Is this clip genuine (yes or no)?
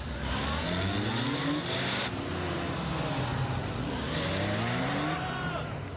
yes